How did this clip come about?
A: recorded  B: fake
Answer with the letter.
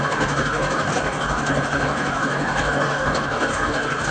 B